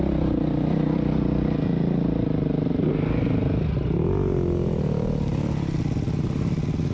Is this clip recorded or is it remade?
recorded